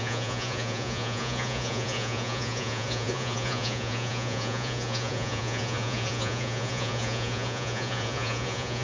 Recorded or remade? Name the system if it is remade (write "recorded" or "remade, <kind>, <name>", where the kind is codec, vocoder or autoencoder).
remade, vocoder, Vocos